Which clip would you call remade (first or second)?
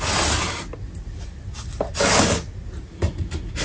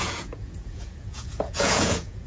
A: second